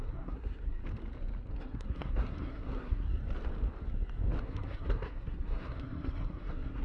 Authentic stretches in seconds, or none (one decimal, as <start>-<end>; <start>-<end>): 0.8-1.5; 3.1-4.4